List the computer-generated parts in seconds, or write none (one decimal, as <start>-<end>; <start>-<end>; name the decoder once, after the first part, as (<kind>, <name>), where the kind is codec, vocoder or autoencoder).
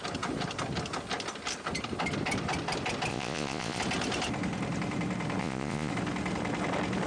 3.1-3.8 (vocoder, Vocos); 5.4-5.9